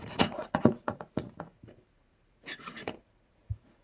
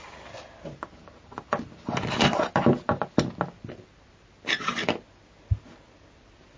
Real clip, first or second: second